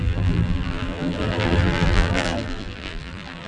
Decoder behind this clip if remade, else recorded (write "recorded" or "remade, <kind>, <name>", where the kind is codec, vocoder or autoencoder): remade, vocoder, BigVGAN v2